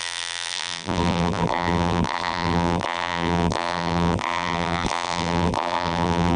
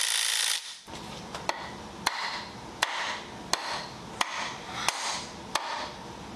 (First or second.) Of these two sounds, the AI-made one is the first